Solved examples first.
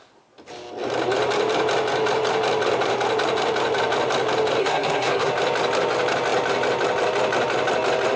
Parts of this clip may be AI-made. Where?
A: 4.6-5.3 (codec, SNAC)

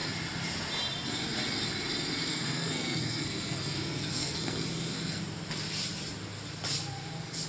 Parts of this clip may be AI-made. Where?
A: 2.3-5.2 (codec, SNAC)

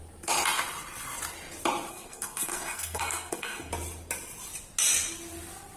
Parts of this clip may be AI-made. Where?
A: 1.9-3.7 (codec, SNAC)

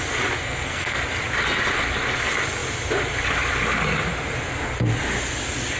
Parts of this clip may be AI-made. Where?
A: 0.4-1.0 (codec, SNAC)

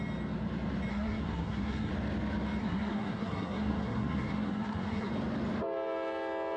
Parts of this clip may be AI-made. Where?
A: 0.9-1.9 (codec, SNAC); 2.6-5.1